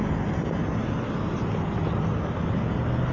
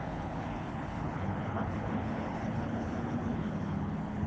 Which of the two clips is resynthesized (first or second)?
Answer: second